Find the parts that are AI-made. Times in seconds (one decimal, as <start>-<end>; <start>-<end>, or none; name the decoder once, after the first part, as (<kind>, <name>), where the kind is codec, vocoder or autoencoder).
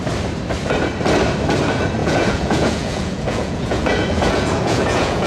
2.0-5.3 (vocoder, Vocos)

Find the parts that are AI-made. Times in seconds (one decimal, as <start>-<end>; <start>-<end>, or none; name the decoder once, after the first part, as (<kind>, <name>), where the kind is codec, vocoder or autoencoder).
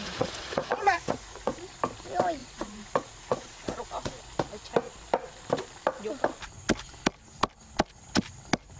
0.0-1.6 (vocoder, Vocos); 2.4-4.2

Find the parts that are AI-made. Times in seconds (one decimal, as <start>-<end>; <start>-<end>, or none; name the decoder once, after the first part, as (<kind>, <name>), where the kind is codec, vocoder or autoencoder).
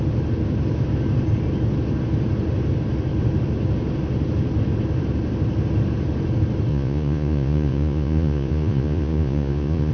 6.7-9.9 (vocoder, Vocos)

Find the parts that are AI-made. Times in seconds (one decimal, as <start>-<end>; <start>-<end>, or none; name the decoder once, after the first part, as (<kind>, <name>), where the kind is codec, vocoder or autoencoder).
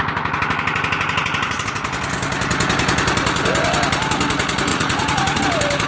4.7-5.4 (vocoder, Vocos)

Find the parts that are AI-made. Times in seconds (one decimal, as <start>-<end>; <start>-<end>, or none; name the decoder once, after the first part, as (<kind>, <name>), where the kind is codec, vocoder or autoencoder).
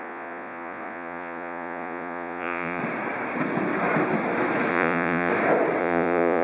0.0-2.8 (vocoder, Vocos); 4.7-5.3; 5.8-6.4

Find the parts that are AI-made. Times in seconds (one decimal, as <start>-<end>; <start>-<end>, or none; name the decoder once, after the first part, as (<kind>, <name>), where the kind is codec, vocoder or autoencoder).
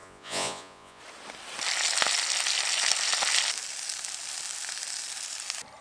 0.0-1.0 (vocoder, Vocos)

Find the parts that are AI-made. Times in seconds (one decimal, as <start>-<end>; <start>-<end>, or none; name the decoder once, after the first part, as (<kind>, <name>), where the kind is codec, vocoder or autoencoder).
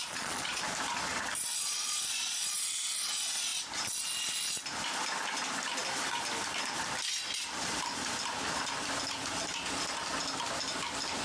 0.0-0.6 (vocoder, Vocos); 1.5-2.5